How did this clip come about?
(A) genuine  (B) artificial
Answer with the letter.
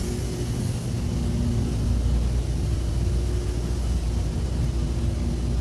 A